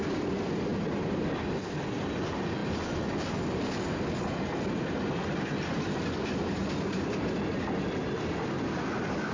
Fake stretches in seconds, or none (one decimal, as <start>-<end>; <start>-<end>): none